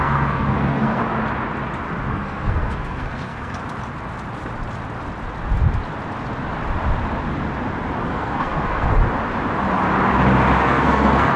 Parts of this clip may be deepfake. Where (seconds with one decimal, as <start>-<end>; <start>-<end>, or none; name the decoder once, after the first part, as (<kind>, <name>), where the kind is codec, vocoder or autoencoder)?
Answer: 0.0-1.0 (codec, SNAC); 2.1-3.6; 8.1-9.0; 10.6-11.4